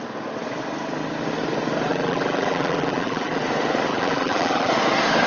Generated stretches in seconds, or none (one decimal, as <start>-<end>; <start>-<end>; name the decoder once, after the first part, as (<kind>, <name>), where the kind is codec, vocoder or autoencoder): 1.9-3.4 (vocoder, BigVGAN v2); 3.9-4.7